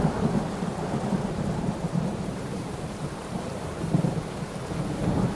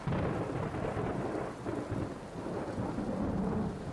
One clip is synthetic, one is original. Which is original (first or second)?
second